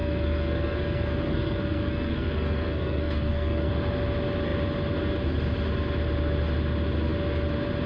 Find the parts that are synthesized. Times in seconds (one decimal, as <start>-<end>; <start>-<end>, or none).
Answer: 0.0-3.7